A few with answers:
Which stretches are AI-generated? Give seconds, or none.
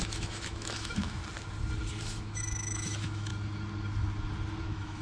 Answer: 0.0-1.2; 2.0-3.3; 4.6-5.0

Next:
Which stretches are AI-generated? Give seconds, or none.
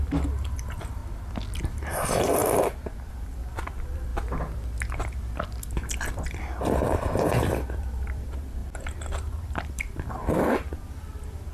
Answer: 0.0-1.0; 1.6-2.4; 3.1-4.1; 5.4-11.5